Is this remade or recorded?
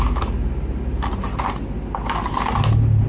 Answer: recorded